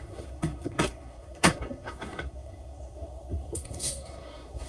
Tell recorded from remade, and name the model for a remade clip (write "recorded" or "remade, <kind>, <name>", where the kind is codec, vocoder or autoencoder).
remade, codec, SNAC